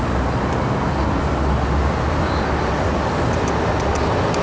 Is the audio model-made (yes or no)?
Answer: no